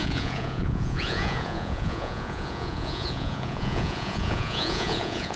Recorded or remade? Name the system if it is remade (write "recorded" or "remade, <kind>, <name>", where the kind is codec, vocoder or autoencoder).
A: remade, vocoder, Vocos